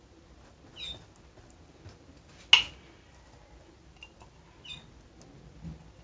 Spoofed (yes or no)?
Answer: no